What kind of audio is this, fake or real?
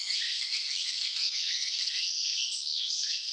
fake